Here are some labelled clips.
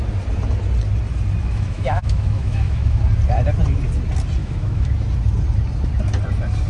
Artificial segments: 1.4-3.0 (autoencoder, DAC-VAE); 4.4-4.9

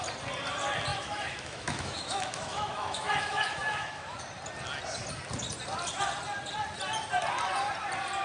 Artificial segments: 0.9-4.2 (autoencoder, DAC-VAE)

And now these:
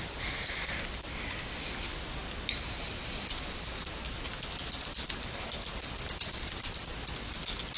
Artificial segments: none

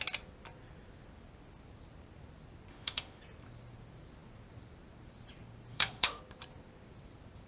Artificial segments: 2.7-3.2 (autoencoder, DAC-VAE); 5.7-6.2